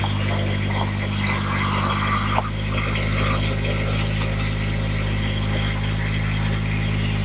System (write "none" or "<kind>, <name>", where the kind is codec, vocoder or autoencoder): none